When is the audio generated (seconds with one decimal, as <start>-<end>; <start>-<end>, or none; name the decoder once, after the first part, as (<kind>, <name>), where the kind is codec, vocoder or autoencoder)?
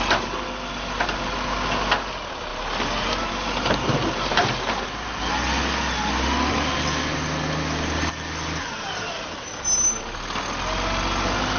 2.5-5.3 (vocoder, BigVGAN v2)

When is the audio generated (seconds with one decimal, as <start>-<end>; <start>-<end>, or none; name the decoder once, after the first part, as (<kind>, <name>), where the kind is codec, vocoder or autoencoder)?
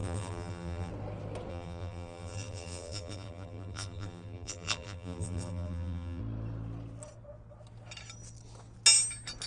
0.0-0.9 (vocoder, BigVGAN v2); 1.5-6.2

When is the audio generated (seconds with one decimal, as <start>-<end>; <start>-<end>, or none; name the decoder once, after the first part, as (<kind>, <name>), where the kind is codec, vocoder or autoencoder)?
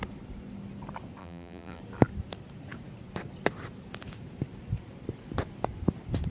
1.2-1.8 (vocoder, BigVGAN v2)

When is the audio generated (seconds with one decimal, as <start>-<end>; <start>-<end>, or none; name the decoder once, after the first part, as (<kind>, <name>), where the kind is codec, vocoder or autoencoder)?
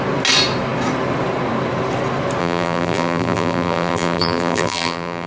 2.4-5.3 (vocoder, BigVGAN v2)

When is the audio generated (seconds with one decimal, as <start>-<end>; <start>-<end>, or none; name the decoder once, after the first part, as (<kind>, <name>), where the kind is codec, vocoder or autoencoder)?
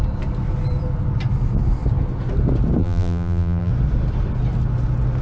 2.8-3.7 (vocoder, BigVGAN v2)